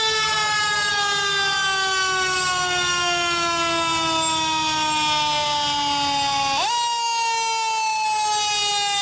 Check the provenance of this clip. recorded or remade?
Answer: recorded